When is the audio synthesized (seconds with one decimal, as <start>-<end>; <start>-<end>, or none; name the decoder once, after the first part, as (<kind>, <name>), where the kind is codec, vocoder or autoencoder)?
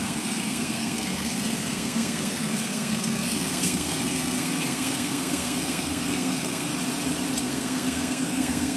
0.0-6.7 (codec, SNAC); 7.4-8.8